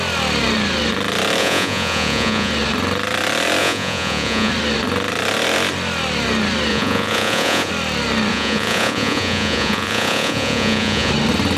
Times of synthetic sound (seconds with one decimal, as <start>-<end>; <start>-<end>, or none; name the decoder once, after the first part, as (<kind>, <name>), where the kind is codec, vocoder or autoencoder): 1.4-2.5 (vocoder, Vocos); 3.6-4.5; 6.7-7.7; 8.3-11.1